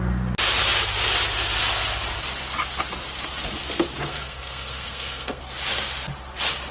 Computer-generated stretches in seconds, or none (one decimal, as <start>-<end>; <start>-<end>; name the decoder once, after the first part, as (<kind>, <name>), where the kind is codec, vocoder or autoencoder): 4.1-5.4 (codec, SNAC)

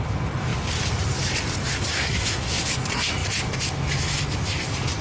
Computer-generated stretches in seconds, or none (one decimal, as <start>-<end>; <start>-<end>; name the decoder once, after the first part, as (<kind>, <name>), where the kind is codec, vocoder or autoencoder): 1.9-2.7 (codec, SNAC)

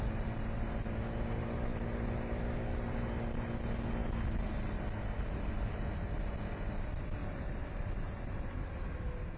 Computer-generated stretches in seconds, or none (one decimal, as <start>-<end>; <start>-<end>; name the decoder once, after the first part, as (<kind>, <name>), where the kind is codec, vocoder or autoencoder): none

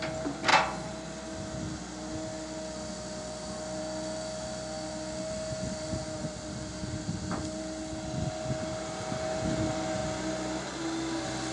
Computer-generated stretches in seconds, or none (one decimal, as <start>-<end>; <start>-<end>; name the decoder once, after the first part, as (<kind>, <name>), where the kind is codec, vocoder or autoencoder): none

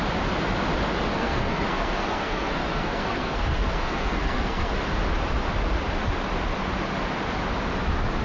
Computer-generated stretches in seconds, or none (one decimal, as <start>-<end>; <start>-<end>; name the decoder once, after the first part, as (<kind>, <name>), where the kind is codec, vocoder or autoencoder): 1.1-4.7 (codec, SNAC)